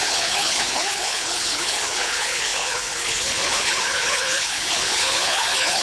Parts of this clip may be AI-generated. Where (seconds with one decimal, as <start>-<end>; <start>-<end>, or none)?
0.0-5.8